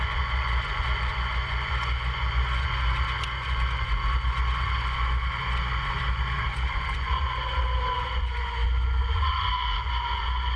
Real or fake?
fake